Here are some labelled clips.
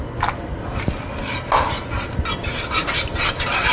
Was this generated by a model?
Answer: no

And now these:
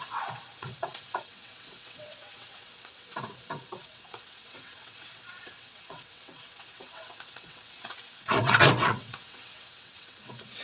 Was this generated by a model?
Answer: yes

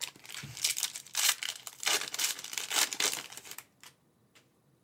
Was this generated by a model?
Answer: yes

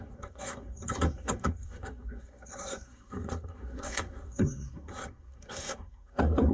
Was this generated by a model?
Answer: yes